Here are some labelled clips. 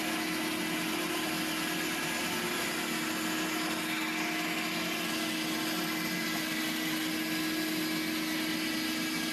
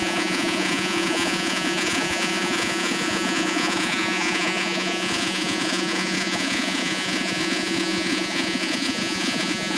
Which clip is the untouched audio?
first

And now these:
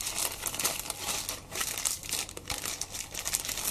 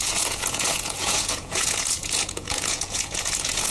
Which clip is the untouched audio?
first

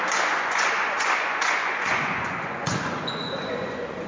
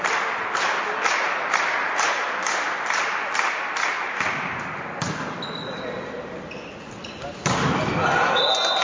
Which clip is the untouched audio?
second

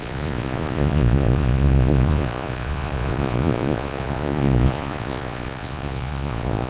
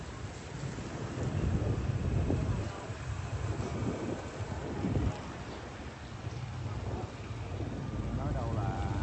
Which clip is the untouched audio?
second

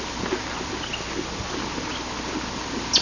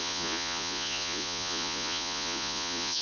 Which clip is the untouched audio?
first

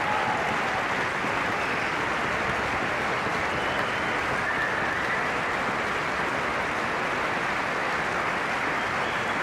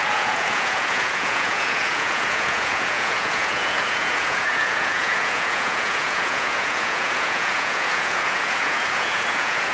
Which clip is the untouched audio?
first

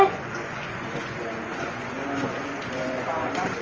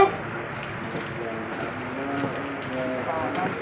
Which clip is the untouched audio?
second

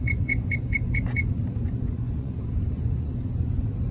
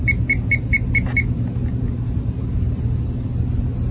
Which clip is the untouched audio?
second